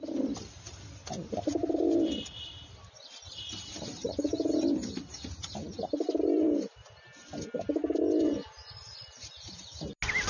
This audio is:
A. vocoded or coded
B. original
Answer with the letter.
B